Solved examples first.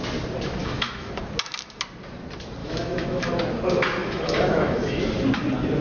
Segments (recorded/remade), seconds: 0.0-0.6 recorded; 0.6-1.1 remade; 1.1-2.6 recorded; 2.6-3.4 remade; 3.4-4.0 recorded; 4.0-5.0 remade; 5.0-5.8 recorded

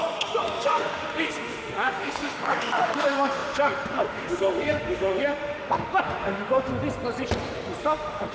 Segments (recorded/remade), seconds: 0.0-6.7 remade; 6.7-7.8 recorded; 7.8-8.3 remade

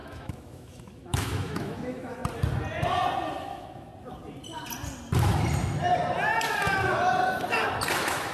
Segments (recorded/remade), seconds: 0.0-2.2 remade; 2.2-3.4 recorded; 3.4-3.9 remade; 3.9-7.9 recorded; 7.9-8.3 remade

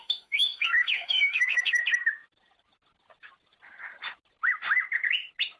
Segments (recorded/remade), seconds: 0.0-1.8 remade; 1.8-5.6 recorded

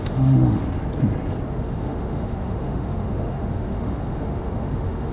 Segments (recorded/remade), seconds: 0.0-0.6 remade; 0.6-1.5 recorded; 1.5-5.1 remade

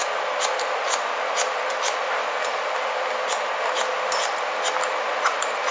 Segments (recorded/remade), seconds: 0.0-5.7 recorded

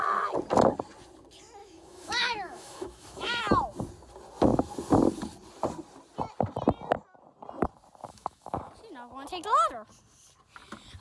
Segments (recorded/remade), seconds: 0.0-1.6 recorded; 1.6-3.4 remade; 3.4-8.0 recorded; 8.0-8.7 remade; 8.7-11.0 recorded